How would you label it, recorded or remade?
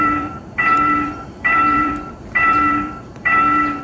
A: remade